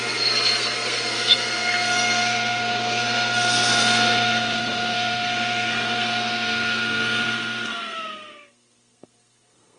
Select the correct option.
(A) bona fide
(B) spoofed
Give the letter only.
B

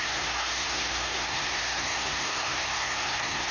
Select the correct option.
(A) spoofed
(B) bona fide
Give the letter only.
A